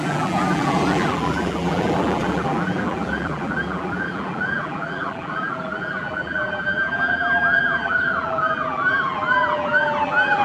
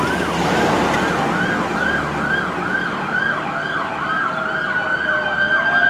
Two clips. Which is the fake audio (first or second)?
first